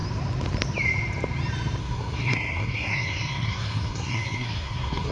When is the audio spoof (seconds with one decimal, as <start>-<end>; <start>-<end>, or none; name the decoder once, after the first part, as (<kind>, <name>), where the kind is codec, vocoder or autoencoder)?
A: 1.8-5.1 (codec, SNAC)